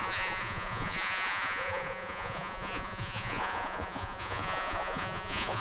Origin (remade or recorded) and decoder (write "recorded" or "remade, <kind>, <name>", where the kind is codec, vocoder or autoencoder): remade, vocoder, Vocos